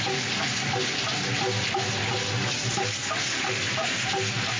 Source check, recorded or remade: recorded